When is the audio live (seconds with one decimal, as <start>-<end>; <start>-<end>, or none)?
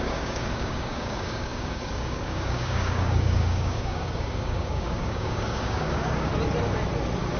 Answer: 6.3-7.4